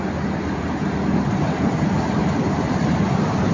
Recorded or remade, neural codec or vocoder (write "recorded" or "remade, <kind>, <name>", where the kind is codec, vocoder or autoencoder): recorded